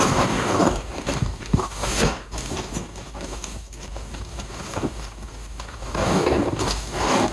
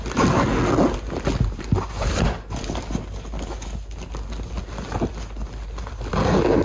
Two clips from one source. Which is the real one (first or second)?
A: second